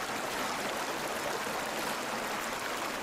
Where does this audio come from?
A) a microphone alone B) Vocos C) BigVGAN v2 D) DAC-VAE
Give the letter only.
A